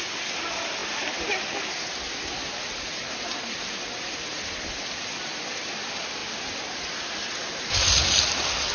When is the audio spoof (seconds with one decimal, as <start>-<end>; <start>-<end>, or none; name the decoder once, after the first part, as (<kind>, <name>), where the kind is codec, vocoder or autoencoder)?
none